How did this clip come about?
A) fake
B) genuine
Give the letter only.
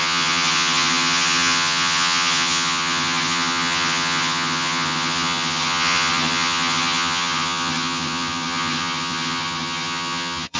A